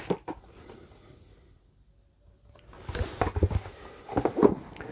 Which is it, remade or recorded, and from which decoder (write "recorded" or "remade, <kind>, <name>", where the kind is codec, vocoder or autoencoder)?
recorded